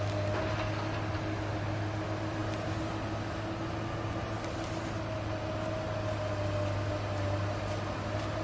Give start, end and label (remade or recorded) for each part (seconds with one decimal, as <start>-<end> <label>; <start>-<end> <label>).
0.0-8.4 recorded